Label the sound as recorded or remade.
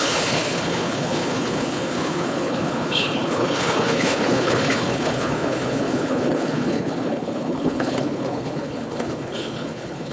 remade